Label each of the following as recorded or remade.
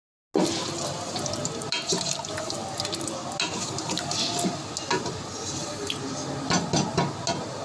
recorded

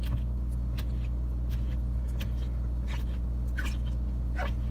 recorded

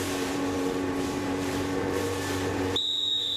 remade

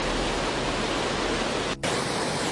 recorded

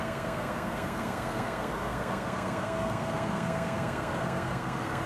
remade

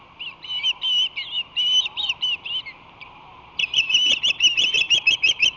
recorded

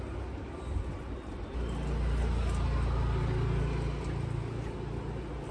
recorded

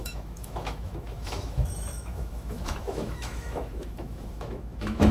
remade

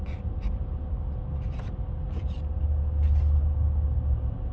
recorded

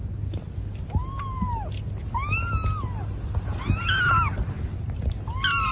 recorded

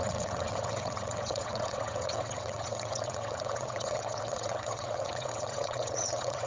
remade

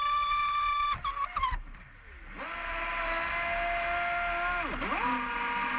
recorded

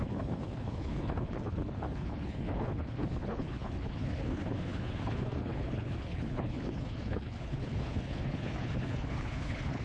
remade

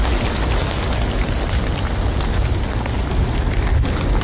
recorded